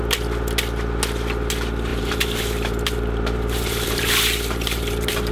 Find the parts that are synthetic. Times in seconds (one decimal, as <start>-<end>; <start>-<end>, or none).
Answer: 1.9-5.3